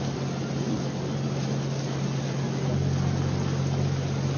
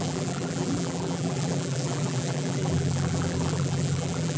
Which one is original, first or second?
first